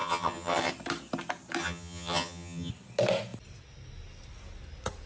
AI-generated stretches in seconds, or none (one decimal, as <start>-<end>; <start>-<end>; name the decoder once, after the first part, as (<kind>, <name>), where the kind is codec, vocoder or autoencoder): 0.0-0.7 (vocoder, HiFi-GAN); 1.6-2.7